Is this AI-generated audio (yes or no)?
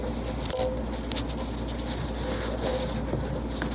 no